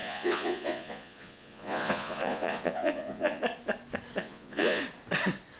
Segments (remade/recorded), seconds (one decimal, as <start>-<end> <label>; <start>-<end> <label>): 0.0-3.4 remade; 3.4-4.2 recorded; 4.2-4.8 remade; 4.8-5.6 recorded